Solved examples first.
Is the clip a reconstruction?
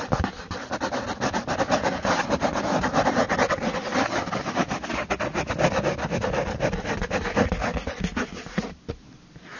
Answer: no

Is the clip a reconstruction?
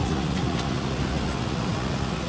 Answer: yes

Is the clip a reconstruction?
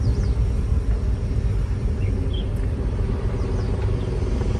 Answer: no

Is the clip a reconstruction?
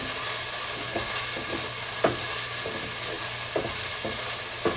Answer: no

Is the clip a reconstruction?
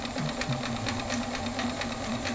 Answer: yes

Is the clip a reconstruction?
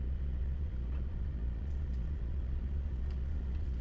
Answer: yes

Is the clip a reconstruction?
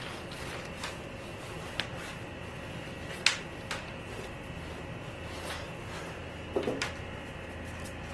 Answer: no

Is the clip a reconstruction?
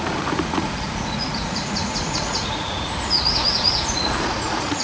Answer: yes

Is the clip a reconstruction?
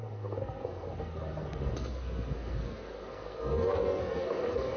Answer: yes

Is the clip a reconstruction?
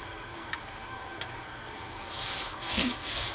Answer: yes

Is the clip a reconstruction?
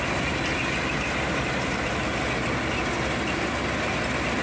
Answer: no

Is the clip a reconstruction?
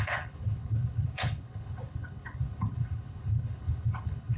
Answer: yes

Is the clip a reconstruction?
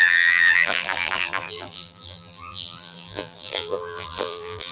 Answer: yes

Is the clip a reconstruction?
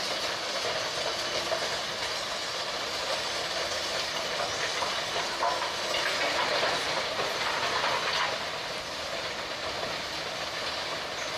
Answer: no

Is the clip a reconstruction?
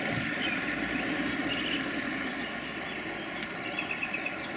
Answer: no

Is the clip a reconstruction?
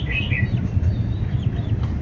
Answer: yes